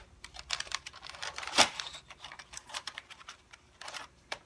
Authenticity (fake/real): fake